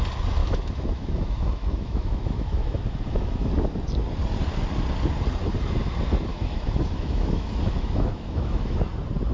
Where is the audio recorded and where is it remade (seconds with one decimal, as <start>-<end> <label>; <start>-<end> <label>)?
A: 0.0-0.4 recorded; 0.4-3.5 remade; 3.5-6.3 recorded; 6.3-8.8 remade; 8.8-9.3 recorded